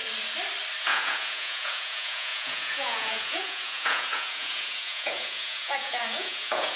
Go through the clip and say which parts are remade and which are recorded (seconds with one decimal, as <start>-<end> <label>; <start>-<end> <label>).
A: 0.0-0.8 recorded; 0.8-6.8 remade